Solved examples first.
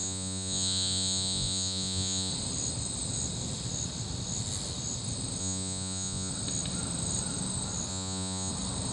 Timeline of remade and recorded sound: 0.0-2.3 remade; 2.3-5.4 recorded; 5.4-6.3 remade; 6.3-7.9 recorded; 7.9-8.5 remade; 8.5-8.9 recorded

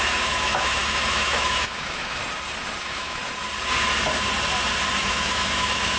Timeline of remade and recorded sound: 0.0-2.2 remade; 2.2-2.8 recorded; 2.8-3.2 remade; 3.2-5.0 recorded; 5.0-6.0 remade

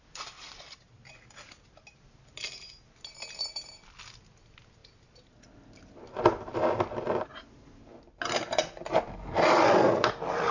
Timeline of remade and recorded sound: 0.0-10.5 recorded

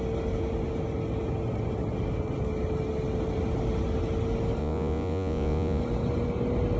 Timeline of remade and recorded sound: 0.0-4.6 recorded; 4.6-5.8 remade; 5.8-6.8 recorded

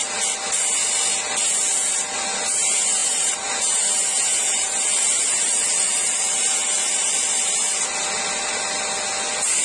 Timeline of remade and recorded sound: 0.0-3.0 recorded; 3.0-7.1 remade; 7.1-9.6 recorded

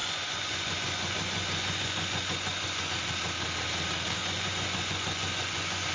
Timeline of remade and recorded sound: 0.0-2.9 remade; 2.9-4.2 recorded; 4.2-5.9 remade

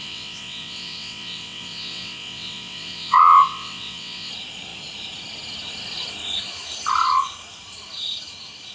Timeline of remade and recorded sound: 0.0-4.3 remade; 4.3-8.7 recorded